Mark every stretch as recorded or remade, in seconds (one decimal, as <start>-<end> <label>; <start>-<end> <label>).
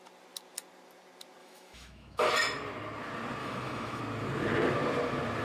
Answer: 0.0-1.4 recorded; 1.4-2.3 remade; 2.3-3.4 recorded; 3.4-4.0 remade; 4.0-5.4 recorded